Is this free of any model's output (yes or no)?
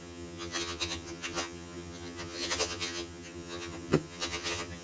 no